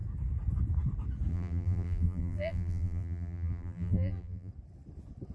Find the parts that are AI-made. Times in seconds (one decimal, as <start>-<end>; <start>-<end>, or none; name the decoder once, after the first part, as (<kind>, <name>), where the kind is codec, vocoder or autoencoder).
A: 1.3-4.5 (vocoder, BigVGAN v2)

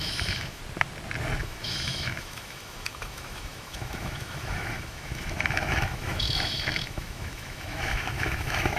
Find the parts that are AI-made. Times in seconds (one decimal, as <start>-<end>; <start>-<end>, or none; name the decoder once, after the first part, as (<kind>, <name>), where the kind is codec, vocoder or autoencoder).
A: 0.0-0.6 (autoencoder, DAC-VAE); 1.4-8.8

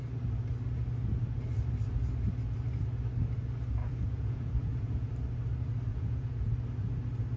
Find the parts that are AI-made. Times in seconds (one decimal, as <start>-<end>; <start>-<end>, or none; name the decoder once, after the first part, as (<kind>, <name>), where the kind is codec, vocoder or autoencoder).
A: 3.8-5.1 (vocoder, Vocos); 5.9-6.5